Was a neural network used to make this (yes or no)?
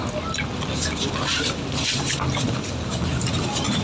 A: no